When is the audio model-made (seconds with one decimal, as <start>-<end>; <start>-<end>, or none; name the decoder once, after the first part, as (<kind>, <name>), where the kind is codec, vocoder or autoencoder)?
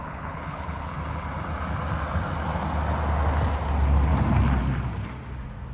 0.0-0.9 (codec, HILCodec)